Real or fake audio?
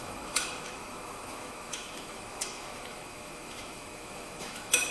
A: fake